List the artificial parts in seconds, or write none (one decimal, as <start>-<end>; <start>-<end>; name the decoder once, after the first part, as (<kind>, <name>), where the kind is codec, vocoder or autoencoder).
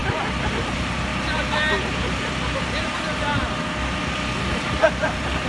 0.5-1.1 (vocoder, BigVGAN v2); 4.4-5.5